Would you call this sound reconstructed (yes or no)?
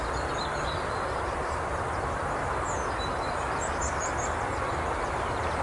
no